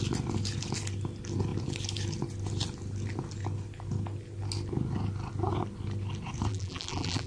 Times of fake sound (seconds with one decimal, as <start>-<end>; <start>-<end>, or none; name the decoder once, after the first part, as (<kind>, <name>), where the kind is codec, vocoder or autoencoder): 6.5-7.3 (vocoder, BigVGAN v2)